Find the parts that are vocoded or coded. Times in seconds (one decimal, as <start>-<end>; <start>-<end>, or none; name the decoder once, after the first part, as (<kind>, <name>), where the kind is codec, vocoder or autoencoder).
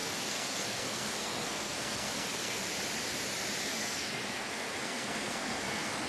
0.0-2.6 (codec, SNAC); 3.6-6.1